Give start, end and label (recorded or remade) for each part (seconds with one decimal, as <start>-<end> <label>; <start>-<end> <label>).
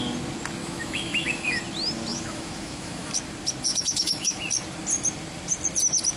0.0-0.6 recorded; 0.6-1.6 remade; 1.6-2.1 recorded; 2.1-3.1 remade; 3.1-3.7 recorded; 3.7-4.4 remade; 4.4-6.2 recorded